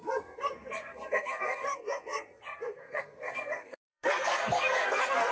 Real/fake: fake